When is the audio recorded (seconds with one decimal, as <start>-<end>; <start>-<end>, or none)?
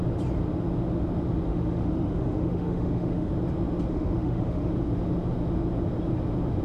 0.0-1.5; 3.3-3.9; 4.7-6.6